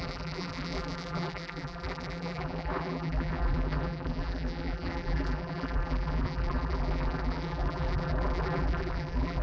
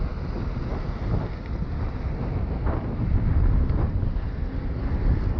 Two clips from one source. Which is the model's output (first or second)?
first